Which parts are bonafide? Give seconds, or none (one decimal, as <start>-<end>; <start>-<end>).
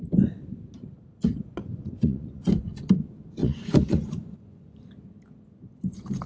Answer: 0.0-1.6; 2.4-3.4; 4.8-6.3